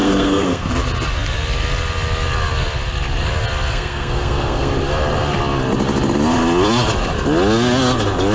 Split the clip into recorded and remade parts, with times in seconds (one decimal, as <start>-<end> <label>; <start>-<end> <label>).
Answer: 0.0-0.7 remade; 0.7-3.7 recorded; 3.7-4.7 remade; 4.7-8.3 recorded

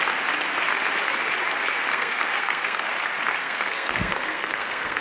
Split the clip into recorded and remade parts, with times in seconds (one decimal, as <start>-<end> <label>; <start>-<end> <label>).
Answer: 0.0-1.9 recorded; 1.9-2.9 remade; 2.9-3.4 recorded; 3.4-5.0 remade